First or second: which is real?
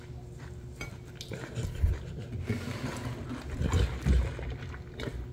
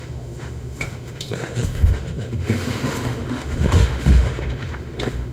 first